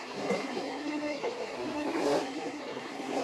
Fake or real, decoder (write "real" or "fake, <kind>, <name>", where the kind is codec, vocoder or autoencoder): fake, codec, SNAC